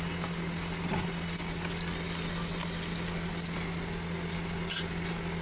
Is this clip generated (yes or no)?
no